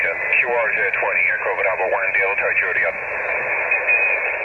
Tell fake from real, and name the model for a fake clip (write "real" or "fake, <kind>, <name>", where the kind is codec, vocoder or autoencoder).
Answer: real